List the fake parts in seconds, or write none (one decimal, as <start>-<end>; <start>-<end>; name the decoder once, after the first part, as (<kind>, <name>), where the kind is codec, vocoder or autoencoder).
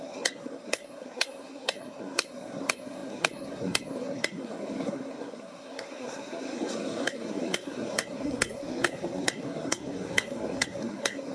0.0-11.3 (codec, SNAC)